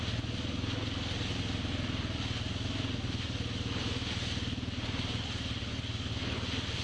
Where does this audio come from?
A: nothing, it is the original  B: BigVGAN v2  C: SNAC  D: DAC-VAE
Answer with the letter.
A